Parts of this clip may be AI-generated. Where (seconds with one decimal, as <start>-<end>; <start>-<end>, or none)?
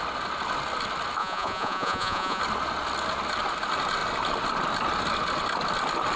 1.2-2.4